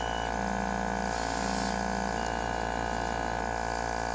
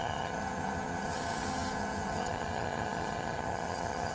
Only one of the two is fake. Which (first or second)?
second